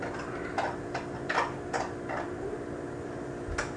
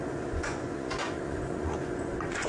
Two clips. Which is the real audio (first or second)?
first